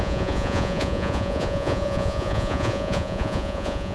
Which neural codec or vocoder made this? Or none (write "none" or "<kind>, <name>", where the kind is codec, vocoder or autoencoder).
vocoder, Vocos